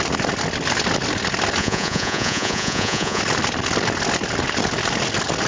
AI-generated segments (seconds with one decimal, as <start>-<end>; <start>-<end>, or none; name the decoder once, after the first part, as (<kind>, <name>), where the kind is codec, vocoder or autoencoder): 1.6-3.2 (vocoder, Vocos)